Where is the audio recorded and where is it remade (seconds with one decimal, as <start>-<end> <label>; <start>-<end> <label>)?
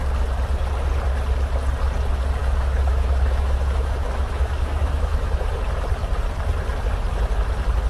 0.0-2.4 recorded; 2.4-5.6 remade; 5.6-7.9 recorded